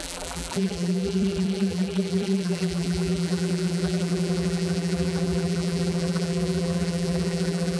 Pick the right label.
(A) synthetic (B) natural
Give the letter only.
A